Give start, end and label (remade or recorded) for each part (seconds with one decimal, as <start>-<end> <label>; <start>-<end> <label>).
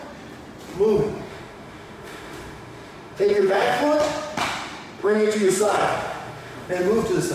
0.0-1.3 recorded; 1.3-3.8 remade; 3.8-5.0 recorded; 5.0-6.7 remade; 6.7-7.3 recorded